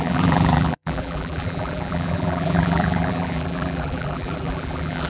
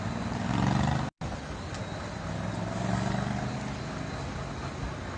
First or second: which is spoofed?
first